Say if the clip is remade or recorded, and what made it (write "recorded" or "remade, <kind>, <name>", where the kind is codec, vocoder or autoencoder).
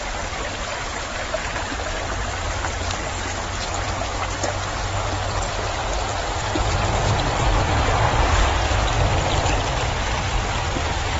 recorded